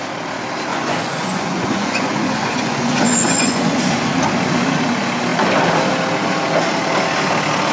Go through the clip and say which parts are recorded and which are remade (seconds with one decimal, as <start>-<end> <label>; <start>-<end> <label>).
0.0-0.7 recorded; 0.7-4.1 remade; 4.1-7.7 recorded

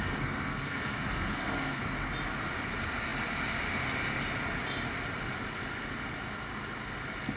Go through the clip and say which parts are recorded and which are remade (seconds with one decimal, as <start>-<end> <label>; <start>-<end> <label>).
0.0-1.8 remade; 1.8-7.4 recorded

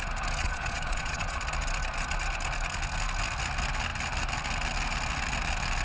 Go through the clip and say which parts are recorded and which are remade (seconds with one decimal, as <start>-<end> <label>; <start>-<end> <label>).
0.0-0.4 recorded; 0.4-1.4 remade; 1.4-5.8 recorded

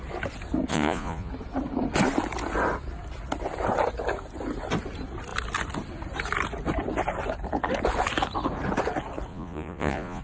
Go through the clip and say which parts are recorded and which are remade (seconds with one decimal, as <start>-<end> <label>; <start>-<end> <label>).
0.0-0.7 recorded; 0.7-1.3 remade; 1.3-9.3 recorded; 9.3-10.2 remade

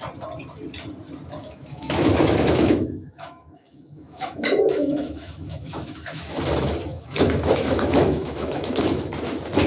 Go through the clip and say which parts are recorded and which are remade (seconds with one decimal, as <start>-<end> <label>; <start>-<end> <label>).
0.0-1.4 recorded; 1.4-6.4 remade; 6.4-6.9 recorded; 6.9-9.1 remade; 9.1-9.7 recorded

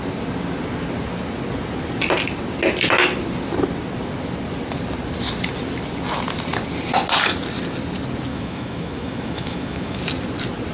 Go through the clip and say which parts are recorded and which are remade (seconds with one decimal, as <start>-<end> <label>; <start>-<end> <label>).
0.0-8.3 recorded; 8.3-10.0 remade; 10.0-10.7 recorded